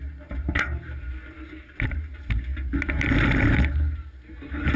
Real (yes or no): yes